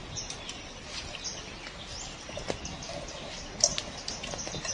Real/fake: real